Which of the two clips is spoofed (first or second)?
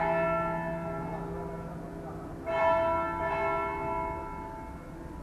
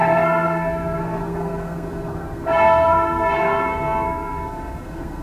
second